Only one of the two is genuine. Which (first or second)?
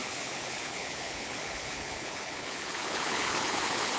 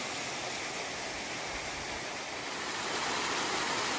second